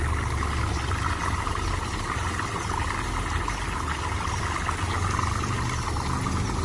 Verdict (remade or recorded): recorded